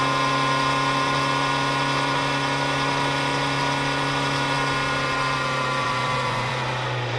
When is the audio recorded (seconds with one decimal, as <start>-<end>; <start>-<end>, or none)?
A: 0.0-5.8; 6.5-7.2